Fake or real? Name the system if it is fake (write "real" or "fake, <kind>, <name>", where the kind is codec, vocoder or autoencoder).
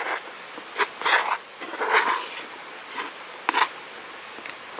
real